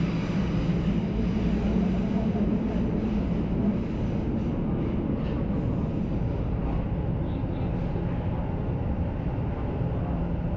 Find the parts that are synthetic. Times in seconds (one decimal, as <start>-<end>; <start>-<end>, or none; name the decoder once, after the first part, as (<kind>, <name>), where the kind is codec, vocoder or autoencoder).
none